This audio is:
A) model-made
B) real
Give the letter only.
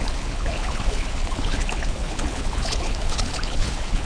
A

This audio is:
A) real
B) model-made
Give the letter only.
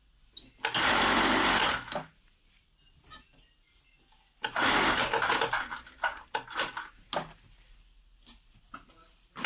A